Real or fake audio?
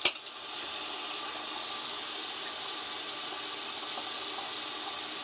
real